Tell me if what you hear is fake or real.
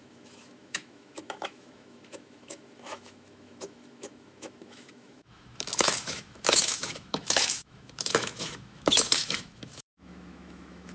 fake